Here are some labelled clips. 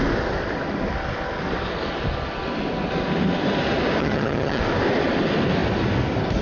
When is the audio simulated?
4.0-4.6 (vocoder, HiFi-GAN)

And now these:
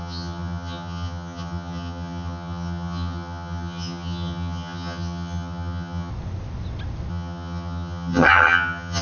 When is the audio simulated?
0.0-6.1 (vocoder, HiFi-GAN); 7.1-9.0